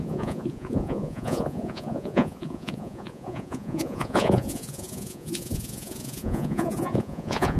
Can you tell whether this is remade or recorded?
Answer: remade